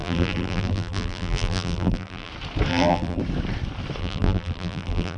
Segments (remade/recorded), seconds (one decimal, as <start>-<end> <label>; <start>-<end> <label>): 0.0-2.3 remade; 2.3-2.7 recorded; 2.7-3.2 remade; 3.2-4.0 recorded; 4.0-5.2 remade